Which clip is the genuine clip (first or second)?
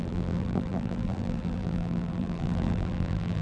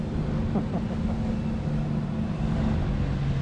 second